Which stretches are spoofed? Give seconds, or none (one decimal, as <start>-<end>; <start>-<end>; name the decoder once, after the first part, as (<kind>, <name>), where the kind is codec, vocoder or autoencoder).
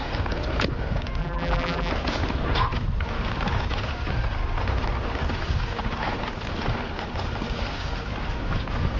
1.2-1.9 (vocoder, BigVGAN v2)